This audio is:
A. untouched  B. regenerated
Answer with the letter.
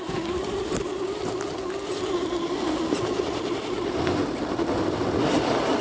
A